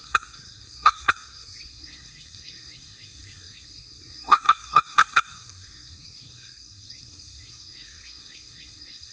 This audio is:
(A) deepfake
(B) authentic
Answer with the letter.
A